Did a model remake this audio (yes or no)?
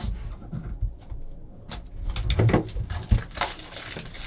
no